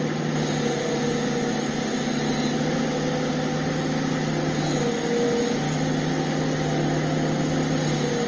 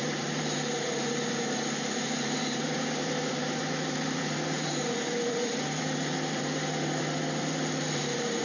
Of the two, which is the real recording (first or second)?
first